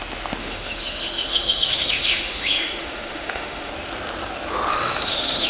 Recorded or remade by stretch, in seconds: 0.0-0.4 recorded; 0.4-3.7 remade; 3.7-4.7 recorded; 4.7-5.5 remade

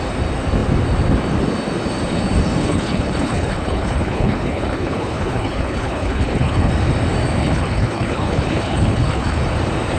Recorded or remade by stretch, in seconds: 0.0-2.6 recorded; 2.6-6.7 remade; 6.7-7.4 recorded; 7.4-9.4 remade; 9.4-10.0 recorded

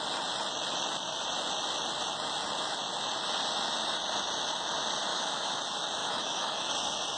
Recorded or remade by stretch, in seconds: 0.0-5.1 recorded; 5.1-5.6 remade; 5.6-6.0 recorded; 6.0-6.7 remade; 6.7-7.2 recorded

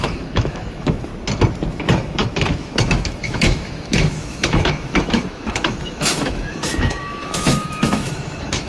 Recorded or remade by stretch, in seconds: 0.0-1.1 remade; 1.1-1.7 recorded; 1.7-8.7 remade

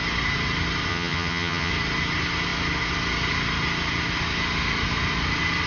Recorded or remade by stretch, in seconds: 0.0-0.9 recorded; 0.9-1.7 remade; 1.7-5.7 recorded